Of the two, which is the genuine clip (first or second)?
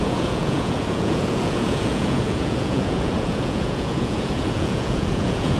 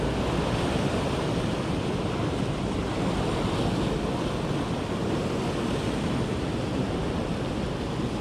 second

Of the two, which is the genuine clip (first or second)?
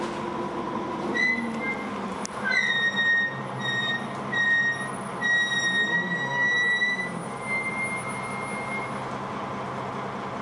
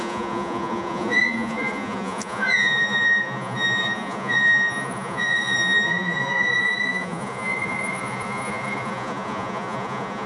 first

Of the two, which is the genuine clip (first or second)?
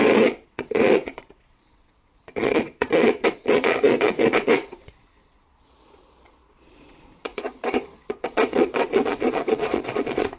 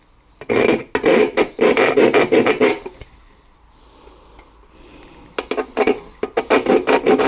second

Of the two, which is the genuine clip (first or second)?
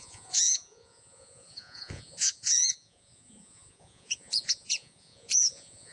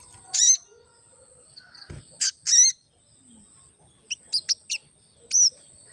second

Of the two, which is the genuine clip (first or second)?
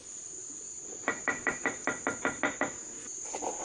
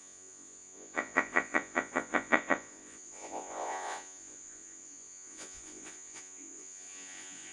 first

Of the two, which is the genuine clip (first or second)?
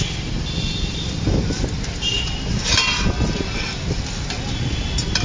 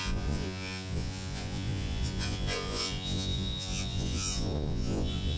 first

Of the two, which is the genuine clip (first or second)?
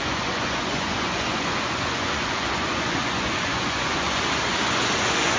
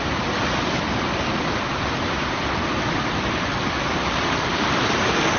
second